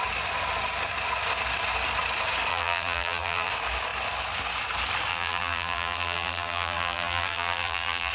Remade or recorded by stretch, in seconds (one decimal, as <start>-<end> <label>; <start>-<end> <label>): 0.0-2.5 recorded; 2.5-3.5 remade; 3.5-5.1 recorded; 5.1-8.1 remade